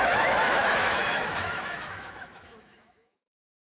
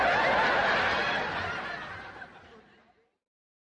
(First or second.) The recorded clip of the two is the second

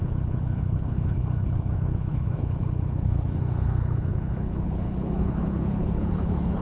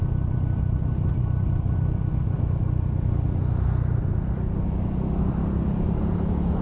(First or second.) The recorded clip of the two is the second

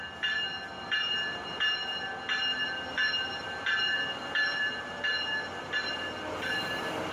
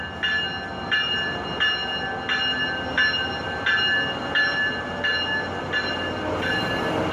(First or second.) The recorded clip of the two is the second